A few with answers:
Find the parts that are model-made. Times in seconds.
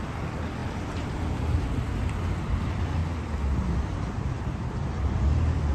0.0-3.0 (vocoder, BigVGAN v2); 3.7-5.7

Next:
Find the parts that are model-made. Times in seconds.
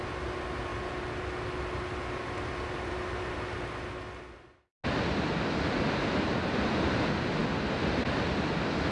none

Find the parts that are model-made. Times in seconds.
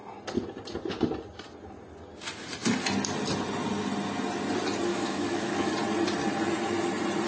4.9-5.7 (autoencoder, DAC-VAE)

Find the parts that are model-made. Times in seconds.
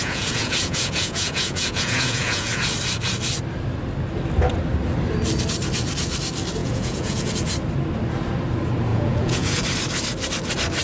0.0-2.6 (vocoder, Vocos); 6.6-7.3; 8.9-9.6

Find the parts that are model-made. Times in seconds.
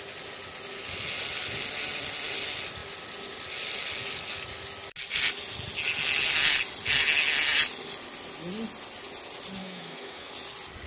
9.6-10.3 (autoencoder, DAC-VAE)